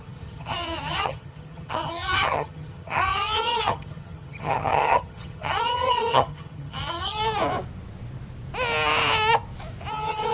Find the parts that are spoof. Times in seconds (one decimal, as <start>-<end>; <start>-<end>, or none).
0.0-7.2; 9.9-10.3